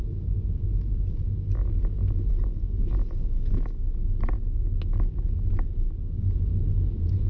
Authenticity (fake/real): real